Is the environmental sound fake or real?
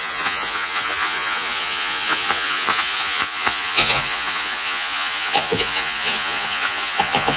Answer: fake